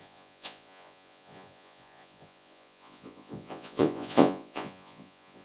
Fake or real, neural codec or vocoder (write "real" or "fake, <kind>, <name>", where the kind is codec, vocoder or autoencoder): fake, vocoder, Vocos